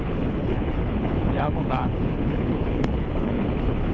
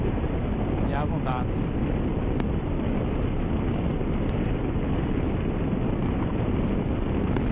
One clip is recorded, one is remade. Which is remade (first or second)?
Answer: first